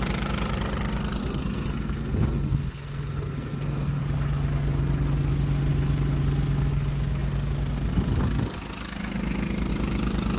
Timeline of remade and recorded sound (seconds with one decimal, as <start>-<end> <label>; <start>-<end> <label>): 0.0-1.2 recorded; 1.2-4.0 remade; 4.0-10.4 recorded